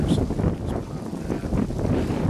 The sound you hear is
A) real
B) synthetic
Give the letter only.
A